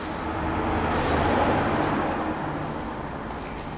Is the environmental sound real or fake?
real